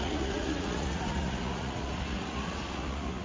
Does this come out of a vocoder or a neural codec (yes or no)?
yes